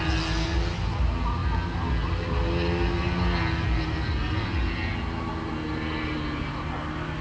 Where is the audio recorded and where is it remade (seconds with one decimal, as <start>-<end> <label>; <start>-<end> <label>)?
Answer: 0.0-7.2 recorded